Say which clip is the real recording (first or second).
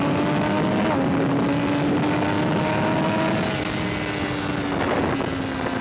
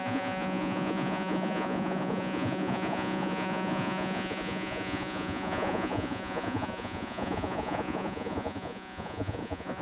first